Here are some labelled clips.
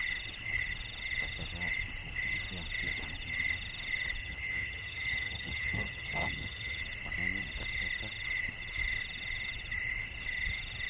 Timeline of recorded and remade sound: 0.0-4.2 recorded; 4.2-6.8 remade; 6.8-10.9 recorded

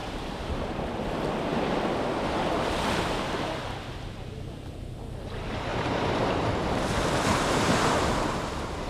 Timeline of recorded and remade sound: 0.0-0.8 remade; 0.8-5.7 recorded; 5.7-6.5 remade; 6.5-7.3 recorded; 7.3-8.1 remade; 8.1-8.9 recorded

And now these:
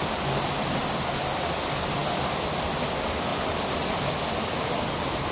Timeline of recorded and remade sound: 0.0-3.3 recorded; 3.3-4.0 remade; 4.0-5.3 recorded

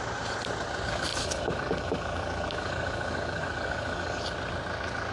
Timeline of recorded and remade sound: 0.0-1.1 recorded; 1.1-4.2 remade; 4.2-5.1 recorded

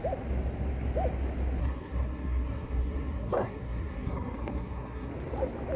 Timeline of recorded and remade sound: 0.0-1.6 recorded; 1.6-5.1 remade; 5.1-5.8 recorded